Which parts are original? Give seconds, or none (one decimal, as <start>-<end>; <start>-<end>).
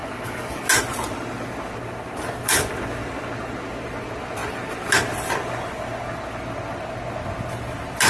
0.7-8.1